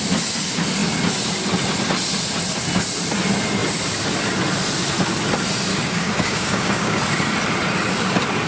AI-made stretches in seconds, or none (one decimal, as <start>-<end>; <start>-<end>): 5.7-7.0

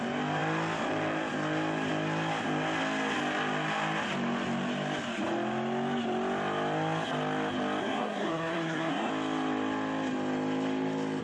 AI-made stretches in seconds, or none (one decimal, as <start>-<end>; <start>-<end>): 7.8-9.1

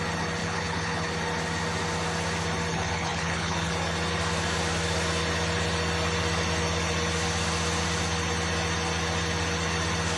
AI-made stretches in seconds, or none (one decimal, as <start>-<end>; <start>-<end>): 0.4-1.1; 2.7-3.7

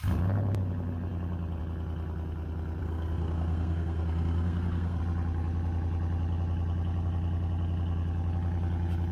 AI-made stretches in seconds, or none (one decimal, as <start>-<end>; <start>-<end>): 2.8-5.0

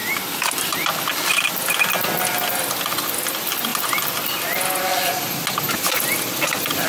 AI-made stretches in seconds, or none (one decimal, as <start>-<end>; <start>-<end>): 0.7-1.1; 2.5-3.7; 5.7-6.9

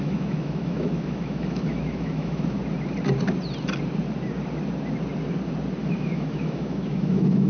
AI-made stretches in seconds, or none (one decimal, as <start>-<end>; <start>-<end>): 0.0-2.6; 5.8-7.5